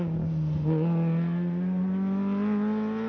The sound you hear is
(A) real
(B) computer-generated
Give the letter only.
A